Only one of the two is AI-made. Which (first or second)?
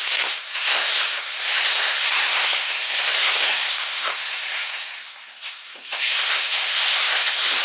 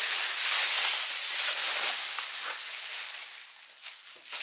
first